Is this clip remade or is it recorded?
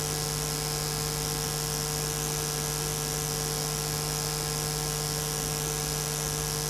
recorded